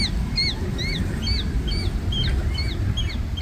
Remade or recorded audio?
recorded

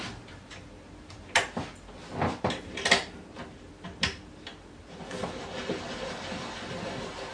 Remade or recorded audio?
recorded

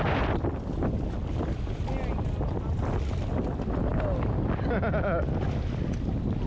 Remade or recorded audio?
recorded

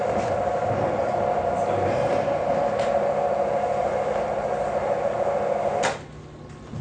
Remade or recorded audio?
recorded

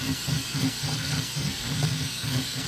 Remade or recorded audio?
remade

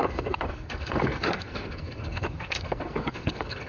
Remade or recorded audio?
remade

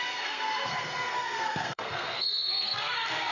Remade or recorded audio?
remade